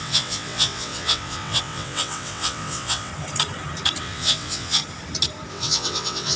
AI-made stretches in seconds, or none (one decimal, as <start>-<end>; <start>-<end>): 0.0-3.1; 4.0-4.8; 5.5-6.4